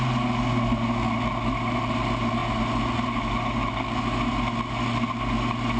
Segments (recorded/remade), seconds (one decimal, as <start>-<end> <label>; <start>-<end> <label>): 0.0-5.8 recorded